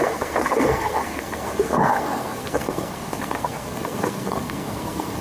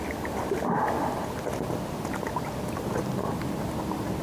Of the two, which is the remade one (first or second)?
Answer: first